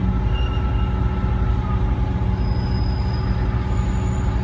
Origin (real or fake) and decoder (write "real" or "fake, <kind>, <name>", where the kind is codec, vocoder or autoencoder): real